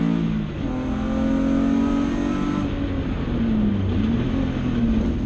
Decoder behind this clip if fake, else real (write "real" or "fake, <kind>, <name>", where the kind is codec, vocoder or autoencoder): real